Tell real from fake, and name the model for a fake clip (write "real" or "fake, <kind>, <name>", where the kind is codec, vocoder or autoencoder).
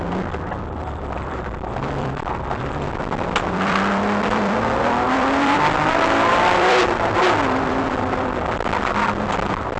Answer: fake, vocoder, BigVGAN v2